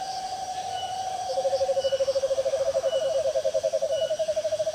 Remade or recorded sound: remade